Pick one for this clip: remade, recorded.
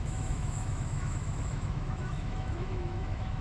remade